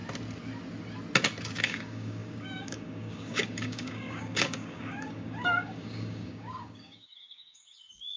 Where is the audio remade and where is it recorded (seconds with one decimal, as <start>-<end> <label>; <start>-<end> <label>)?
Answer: 0.0-1.6 recorded; 1.6-8.2 remade